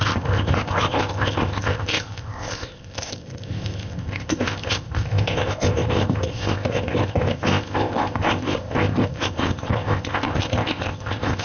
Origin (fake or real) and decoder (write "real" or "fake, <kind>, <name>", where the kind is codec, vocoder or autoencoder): fake, codec, ZipCodec